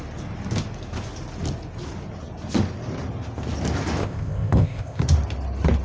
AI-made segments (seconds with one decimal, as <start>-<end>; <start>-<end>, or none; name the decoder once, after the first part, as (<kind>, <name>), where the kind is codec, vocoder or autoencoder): 4.0-5.0 (codec, ZipCodec)